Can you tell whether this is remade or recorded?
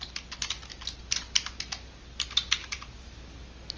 recorded